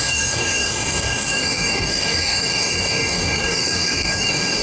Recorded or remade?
remade